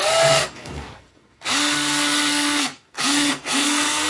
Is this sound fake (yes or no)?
yes